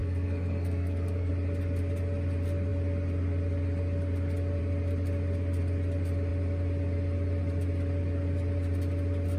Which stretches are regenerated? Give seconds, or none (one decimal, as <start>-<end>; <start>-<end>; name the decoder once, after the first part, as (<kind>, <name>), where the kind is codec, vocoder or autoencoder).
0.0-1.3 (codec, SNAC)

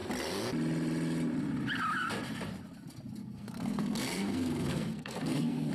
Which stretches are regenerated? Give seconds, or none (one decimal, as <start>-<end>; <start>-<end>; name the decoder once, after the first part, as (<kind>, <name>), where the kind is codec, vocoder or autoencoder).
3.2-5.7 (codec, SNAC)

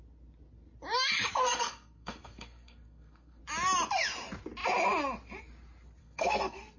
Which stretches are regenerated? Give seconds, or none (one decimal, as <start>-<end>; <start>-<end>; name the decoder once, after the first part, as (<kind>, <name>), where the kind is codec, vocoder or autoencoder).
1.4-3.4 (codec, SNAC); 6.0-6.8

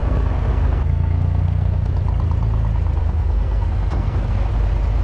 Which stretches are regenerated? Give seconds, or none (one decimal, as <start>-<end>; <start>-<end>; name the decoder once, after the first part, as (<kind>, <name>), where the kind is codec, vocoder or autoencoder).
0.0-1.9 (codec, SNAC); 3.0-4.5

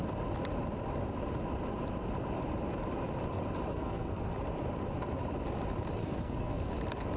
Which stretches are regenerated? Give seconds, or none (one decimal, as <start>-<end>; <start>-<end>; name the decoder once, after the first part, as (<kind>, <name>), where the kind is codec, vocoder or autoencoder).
3.7-4.3 (codec, SNAC); 6.0-6.7

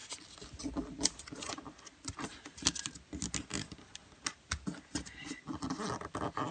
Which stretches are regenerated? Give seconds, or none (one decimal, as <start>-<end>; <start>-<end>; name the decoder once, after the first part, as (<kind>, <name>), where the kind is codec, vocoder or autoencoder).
none

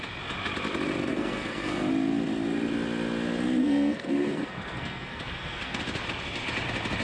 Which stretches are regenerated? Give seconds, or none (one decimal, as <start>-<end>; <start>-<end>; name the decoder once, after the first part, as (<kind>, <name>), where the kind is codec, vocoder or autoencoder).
1.1-1.9 (codec, SNAC); 3.6-5.8